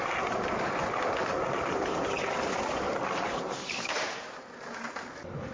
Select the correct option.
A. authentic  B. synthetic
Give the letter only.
A